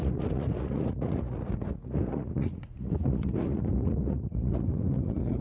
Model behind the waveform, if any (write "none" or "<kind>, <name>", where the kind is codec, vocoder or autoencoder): vocoder, Vocos